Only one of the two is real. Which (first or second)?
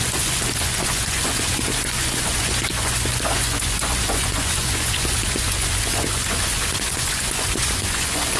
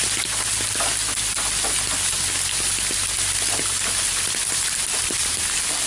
second